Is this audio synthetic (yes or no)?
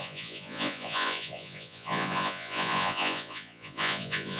yes